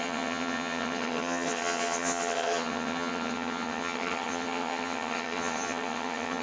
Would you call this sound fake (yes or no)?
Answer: yes